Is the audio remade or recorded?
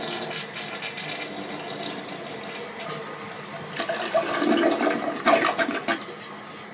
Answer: recorded